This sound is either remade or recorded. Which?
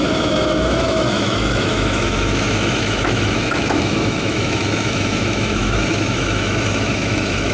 remade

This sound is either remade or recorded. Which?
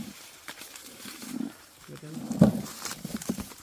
remade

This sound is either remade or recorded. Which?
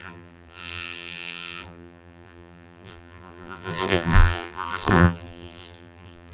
remade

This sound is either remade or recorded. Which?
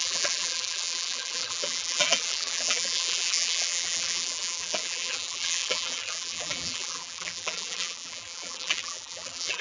remade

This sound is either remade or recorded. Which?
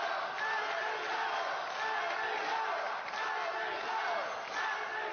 recorded